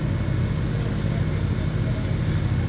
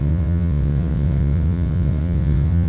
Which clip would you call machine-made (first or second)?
second